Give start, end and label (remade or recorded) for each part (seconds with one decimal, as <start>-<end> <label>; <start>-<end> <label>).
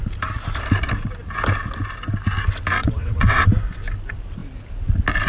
0.0-2.8 recorded; 2.8-3.5 remade; 3.5-5.3 recorded